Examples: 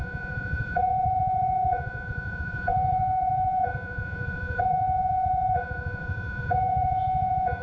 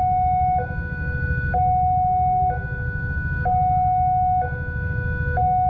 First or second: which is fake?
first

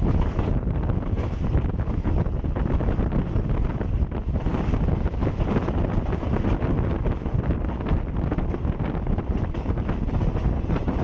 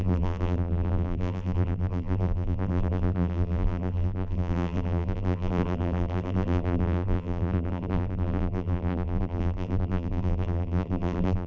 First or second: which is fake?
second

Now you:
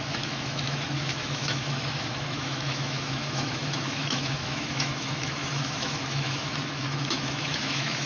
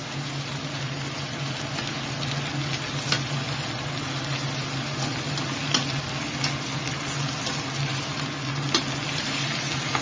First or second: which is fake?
first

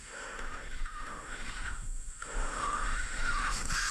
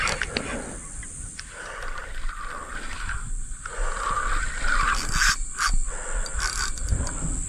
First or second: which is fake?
first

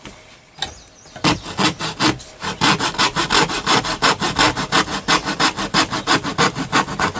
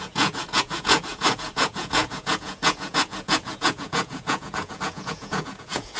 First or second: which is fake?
second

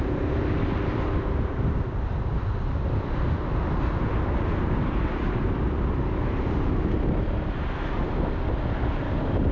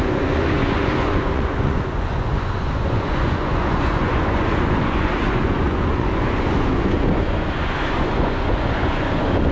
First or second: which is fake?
second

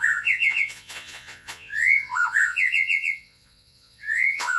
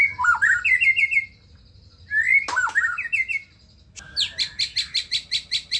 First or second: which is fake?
first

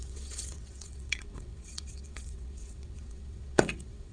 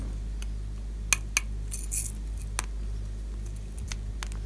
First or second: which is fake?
first